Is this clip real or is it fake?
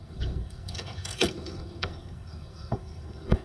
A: fake